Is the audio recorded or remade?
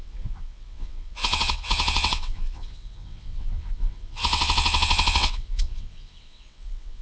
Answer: remade